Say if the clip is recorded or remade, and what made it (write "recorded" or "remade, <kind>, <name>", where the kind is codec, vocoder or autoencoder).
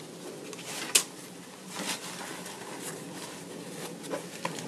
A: recorded